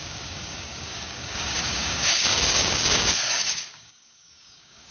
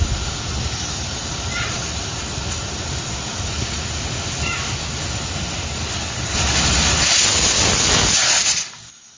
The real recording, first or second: second